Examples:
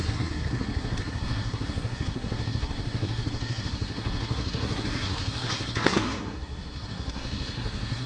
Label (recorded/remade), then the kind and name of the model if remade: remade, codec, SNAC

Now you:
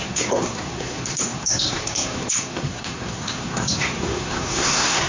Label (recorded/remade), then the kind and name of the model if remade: remade, codec, SNAC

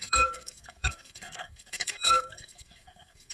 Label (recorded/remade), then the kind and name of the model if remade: remade, codec, SNAC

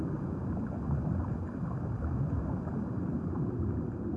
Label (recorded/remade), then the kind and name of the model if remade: recorded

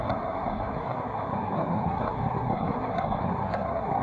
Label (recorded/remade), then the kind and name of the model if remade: remade, codec, SNAC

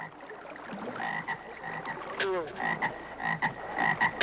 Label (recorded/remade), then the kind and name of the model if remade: recorded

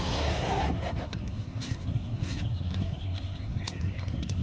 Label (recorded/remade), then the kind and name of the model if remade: remade, codec, SNAC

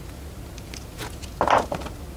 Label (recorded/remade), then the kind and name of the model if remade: recorded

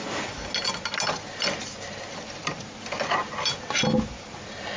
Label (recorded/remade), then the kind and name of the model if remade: recorded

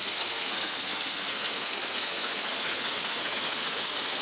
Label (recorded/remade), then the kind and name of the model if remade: remade, codec, SNAC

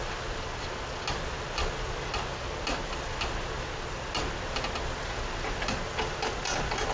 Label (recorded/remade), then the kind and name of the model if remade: recorded